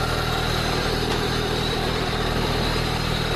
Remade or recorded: remade